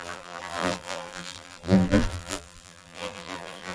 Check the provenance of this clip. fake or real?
fake